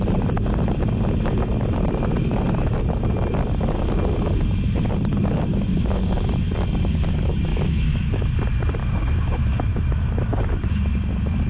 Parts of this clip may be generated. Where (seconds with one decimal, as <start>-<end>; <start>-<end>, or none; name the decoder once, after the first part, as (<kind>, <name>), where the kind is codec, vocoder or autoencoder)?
5.5-6.0 (autoencoder, DAC-VAE); 7.5-8.3; 8.8-10.5